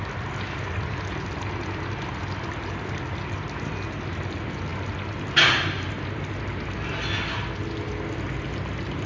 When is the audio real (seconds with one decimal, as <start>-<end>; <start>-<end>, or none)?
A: 0.0-9.1